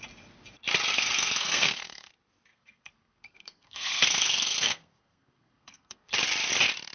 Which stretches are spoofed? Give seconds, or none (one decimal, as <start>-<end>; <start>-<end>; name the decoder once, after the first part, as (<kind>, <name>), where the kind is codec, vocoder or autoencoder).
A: 0.9-2.1 (codec, SNAC); 2.5-6.1